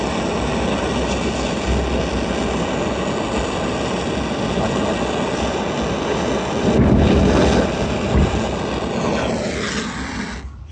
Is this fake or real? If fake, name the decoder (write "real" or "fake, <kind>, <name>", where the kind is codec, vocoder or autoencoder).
real